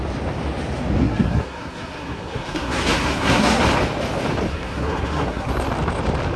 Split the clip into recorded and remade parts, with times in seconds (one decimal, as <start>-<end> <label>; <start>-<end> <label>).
0.0-1.0 recorded; 1.0-3.6 remade; 3.6-4.5 recorded; 4.5-5.5 remade; 5.5-6.4 recorded